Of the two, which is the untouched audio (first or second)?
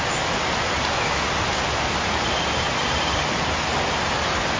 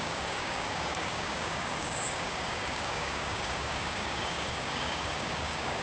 first